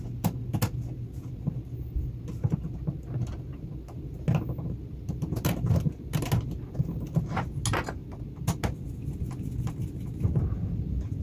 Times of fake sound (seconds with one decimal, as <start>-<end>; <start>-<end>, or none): none